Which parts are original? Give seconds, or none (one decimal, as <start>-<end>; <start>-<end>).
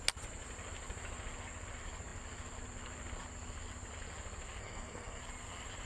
0.0-4.6; 5.2-5.9